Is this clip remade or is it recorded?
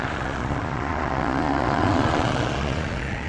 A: remade